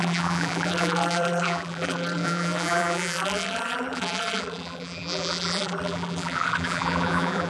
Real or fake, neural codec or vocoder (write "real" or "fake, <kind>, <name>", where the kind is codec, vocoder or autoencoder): fake, vocoder, BigVGAN v2